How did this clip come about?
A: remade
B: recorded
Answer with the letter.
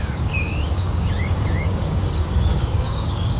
A